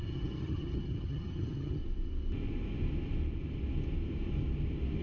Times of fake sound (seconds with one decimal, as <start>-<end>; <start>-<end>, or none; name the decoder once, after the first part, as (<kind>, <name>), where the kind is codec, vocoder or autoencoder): 0.0-1.8 (vocoder, HiFi-GAN)